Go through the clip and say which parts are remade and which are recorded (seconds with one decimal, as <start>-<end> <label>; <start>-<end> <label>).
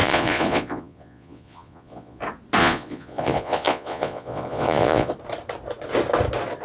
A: 0.0-2.2 remade; 2.2-2.6 recorded; 2.6-5.1 remade; 5.1-6.6 recorded